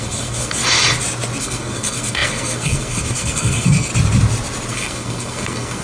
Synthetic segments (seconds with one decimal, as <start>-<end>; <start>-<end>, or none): 0.0-0.6; 1.4-3.9; 4.7-5.8